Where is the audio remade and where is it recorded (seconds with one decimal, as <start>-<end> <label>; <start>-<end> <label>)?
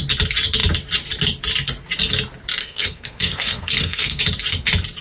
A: 0.0-2.6 recorded; 2.6-4.2 remade; 4.2-5.0 recorded